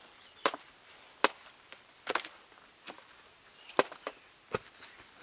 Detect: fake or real real